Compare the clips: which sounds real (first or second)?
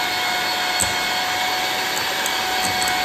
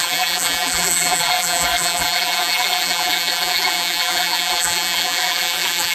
first